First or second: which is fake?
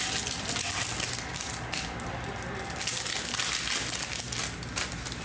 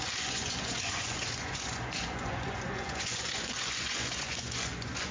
second